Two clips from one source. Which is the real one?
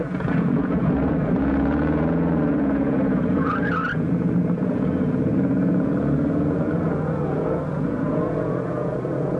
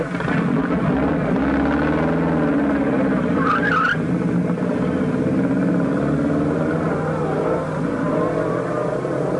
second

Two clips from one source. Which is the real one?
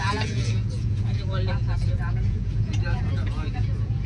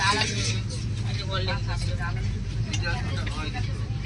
second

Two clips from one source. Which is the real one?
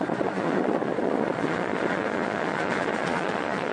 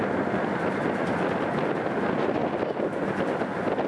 second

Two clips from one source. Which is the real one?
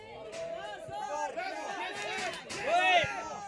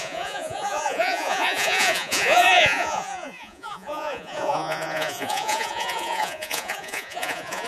first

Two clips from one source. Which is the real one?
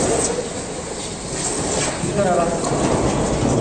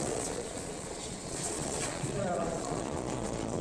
first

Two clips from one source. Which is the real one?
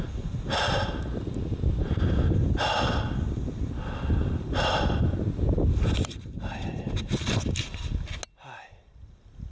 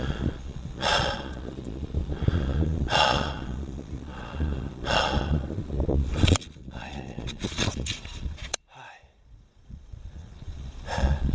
first